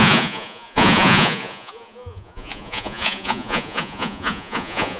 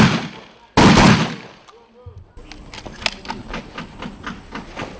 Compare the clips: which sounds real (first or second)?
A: second